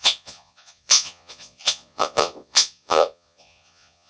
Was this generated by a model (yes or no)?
yes